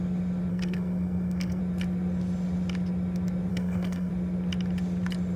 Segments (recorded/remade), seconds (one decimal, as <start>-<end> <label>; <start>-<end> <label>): 0.0-0.5 recorded; 0.5-1.6 remade; 1.6-3.5 recorded; 3.5-4.1 remade; 4.1-5.4 recorded